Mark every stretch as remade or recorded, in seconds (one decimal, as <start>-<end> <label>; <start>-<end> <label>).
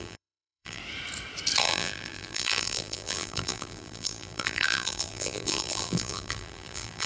0.0-0.8 remade; 0.8-1.6 recorded; 1.6-7.1 remade